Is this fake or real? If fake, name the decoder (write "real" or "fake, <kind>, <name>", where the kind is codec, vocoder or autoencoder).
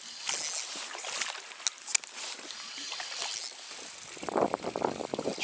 real